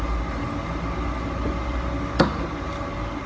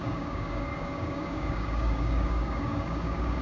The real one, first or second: first